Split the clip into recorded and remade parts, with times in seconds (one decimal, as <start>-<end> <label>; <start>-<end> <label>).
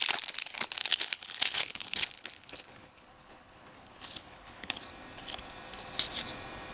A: 0.0-0.8 recorded; 0.8-4.8 remade; 4.8-6.7 recorded